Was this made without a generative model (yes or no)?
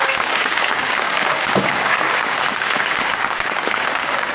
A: no